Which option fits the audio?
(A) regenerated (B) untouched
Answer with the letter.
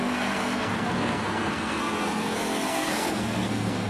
A